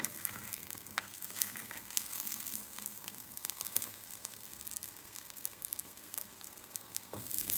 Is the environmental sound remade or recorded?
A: remade